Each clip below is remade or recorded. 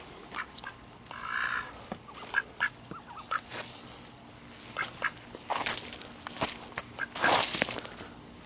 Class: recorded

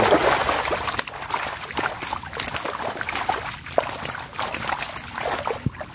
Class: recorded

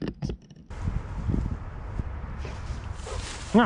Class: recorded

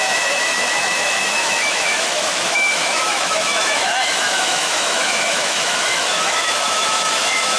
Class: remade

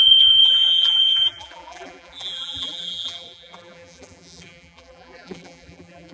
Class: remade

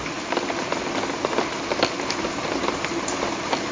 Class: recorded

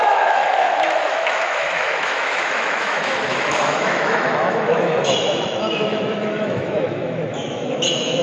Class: remade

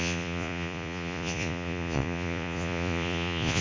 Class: remade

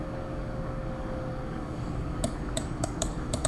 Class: remade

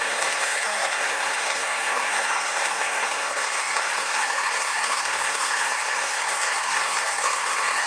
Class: remade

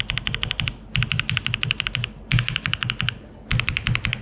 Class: recorded